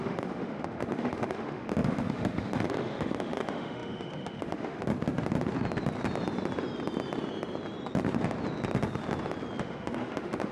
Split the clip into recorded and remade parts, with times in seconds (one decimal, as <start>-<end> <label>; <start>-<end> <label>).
0.0-4.9 remade; 4.9-9.6 recorded; 9.6-10.5 remade